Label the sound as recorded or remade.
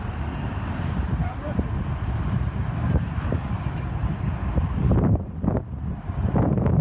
remade